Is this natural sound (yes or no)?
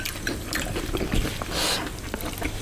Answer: yes